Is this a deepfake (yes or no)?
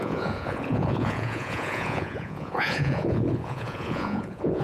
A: yes